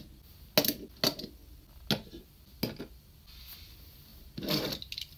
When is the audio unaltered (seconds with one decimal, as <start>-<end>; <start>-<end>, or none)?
0.0-5.2

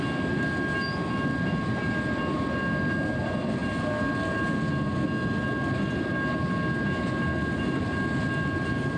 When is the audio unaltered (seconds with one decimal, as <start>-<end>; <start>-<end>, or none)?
0.0-9.0

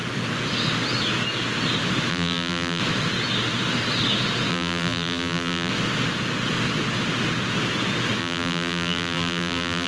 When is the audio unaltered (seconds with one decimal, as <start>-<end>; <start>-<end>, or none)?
0.0-2.1; 2.8-4.5; 5.7-8.2

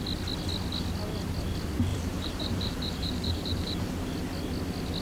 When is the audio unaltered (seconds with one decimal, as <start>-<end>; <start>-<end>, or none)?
0.0-1.9; 4.1-5.0

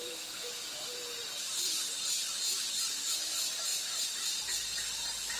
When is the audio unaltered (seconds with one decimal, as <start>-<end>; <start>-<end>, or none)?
0.9-5.4

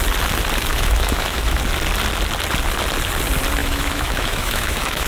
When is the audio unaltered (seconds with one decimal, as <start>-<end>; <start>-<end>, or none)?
0.0-0.7; 1.6-3.6

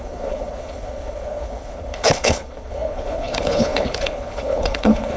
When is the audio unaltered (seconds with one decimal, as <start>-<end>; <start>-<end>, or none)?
none